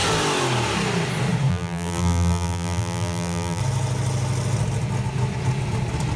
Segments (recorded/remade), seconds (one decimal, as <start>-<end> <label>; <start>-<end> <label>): 0.0-1.5 recorded; 1.5-3.6 remade; 3.6-6.2 recorded